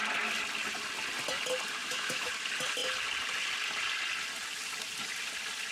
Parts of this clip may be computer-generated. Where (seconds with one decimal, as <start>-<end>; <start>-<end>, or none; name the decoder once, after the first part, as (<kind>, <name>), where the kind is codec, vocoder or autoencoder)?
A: 1.8-2.3 (autoencoder, DAC-VAE)